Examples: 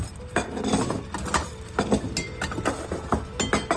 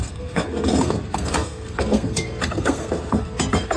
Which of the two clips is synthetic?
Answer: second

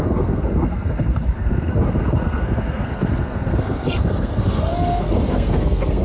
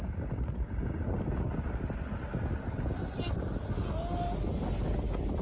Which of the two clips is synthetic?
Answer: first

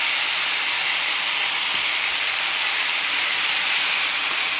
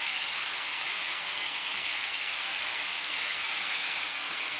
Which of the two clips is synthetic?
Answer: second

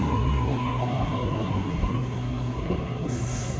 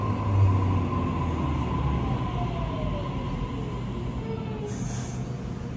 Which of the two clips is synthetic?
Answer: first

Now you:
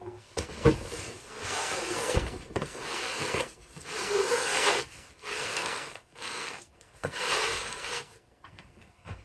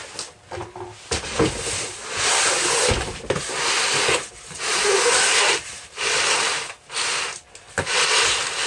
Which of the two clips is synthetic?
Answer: first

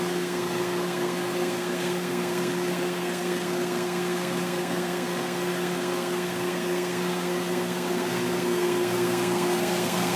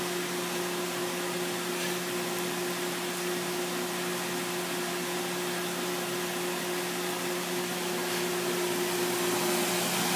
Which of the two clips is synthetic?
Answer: first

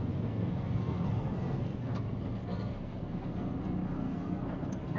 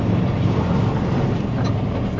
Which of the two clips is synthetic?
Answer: first